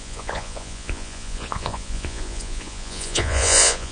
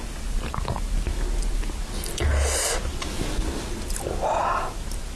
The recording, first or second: second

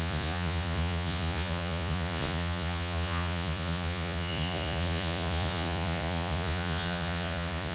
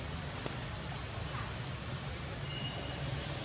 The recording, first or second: second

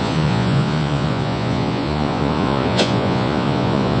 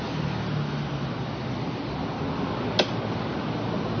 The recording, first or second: second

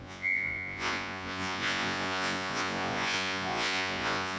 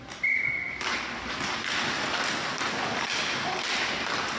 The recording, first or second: second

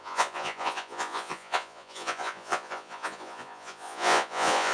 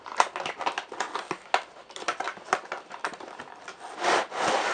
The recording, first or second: second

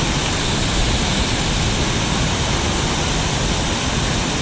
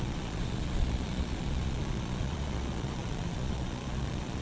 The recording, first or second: first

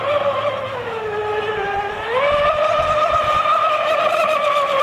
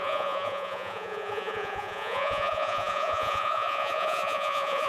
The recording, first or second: first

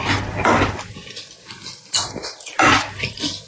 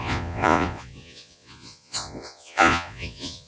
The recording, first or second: first